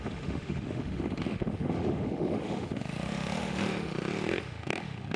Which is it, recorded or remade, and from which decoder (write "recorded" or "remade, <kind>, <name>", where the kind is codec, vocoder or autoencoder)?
remade, autoencoder, DAC-VAE